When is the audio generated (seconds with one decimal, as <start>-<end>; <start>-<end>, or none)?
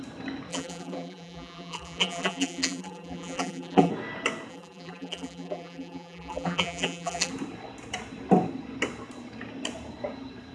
0.5-3.9; 4.5-7.3